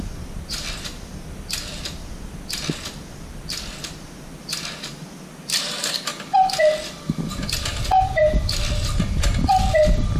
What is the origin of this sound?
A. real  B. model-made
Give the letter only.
A